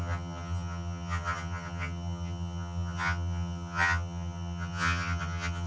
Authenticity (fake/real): fake